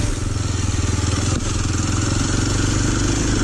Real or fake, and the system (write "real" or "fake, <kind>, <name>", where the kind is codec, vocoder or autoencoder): real